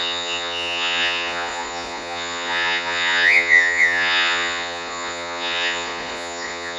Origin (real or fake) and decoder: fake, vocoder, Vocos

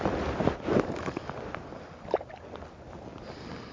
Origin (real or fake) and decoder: real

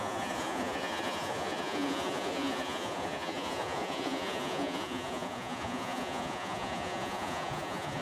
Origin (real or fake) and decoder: fake, vocoder, Vocos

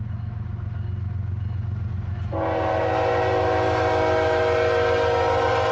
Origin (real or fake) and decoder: real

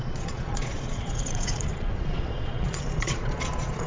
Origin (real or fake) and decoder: fake, vocoder, Vocos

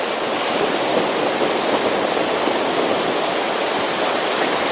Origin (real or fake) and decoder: real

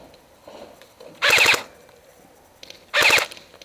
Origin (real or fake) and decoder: real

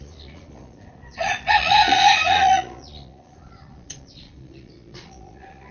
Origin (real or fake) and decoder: fake, vocoder, Vocos